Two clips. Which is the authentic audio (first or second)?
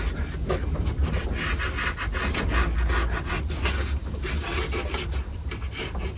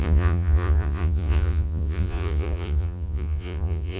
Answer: first